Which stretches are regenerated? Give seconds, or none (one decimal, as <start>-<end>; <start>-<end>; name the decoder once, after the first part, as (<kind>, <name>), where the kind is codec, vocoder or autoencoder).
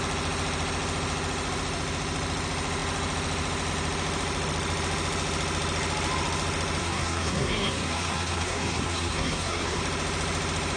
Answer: 6.8-9.8 (codec, SNAC)